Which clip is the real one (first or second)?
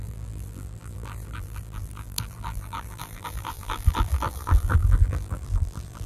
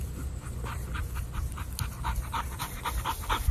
second